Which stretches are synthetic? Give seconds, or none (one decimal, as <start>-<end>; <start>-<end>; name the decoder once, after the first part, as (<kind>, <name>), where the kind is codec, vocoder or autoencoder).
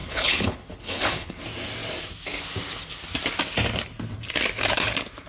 0.0-1.4 (codec, HILCodec)